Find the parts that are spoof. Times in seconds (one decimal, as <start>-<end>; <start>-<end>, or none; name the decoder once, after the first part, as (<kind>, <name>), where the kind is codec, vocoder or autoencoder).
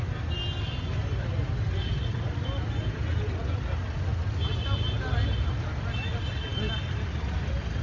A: none